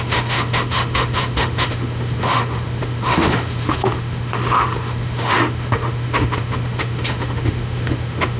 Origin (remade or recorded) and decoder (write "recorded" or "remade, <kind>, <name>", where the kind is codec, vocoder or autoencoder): remade, autoencoder, DAC-VAE